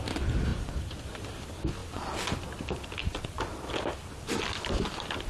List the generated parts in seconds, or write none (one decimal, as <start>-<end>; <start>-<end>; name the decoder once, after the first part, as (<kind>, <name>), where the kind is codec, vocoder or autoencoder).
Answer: 1.8-5.3 (vocoder, BigVGAN v2)